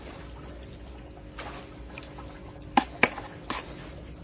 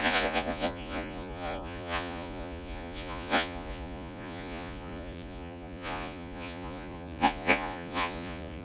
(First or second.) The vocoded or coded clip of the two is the second